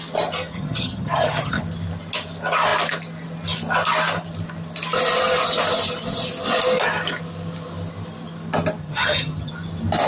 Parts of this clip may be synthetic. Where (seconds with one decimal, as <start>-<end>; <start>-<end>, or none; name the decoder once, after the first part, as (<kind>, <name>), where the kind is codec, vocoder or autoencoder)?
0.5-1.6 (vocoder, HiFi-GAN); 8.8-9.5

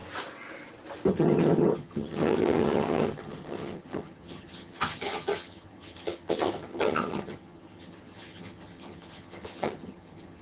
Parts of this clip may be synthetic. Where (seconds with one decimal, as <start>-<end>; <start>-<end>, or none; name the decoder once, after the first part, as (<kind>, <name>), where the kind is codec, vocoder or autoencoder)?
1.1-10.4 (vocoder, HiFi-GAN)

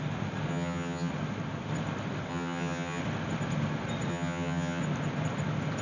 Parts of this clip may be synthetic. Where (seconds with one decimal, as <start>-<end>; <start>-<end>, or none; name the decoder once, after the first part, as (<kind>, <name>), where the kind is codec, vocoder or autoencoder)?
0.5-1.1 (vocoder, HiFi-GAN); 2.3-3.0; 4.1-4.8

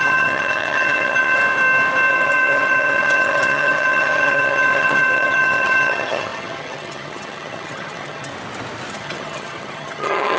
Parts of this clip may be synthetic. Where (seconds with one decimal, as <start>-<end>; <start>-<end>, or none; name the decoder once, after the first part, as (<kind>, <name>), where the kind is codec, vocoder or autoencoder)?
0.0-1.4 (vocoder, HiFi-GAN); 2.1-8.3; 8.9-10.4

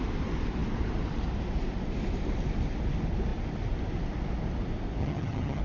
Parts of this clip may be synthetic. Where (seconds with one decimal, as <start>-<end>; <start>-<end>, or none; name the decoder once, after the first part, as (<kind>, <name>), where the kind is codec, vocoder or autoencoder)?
5.0-5.6 (vocoder, HiFi-GAN)

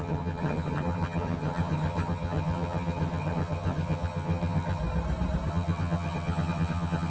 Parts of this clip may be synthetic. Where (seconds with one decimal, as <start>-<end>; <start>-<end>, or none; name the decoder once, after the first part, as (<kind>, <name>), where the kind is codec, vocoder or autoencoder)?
0.0-4.8 (vocoder, HiFi-GAN); 5.5-7.1

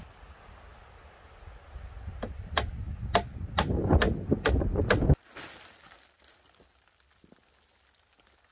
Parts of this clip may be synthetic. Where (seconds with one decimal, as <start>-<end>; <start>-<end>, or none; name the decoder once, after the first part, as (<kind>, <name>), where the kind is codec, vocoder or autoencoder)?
none